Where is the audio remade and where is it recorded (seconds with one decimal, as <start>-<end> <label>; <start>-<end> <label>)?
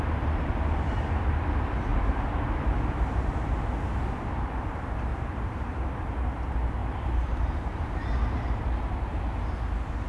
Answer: 0.0-1.9 recorded; 1.9-2.6 remade; 2.6-5.1 recorded; 5.1-6.1 remade; 6.1-6.8 recorded; 6.8-9.1 remade; 9.1-10.1 recorded